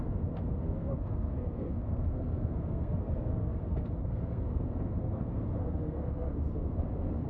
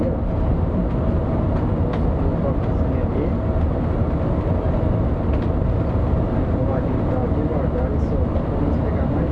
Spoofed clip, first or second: first